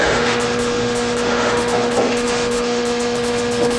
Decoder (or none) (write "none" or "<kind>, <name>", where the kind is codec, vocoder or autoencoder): autoencoder, DAC-VAE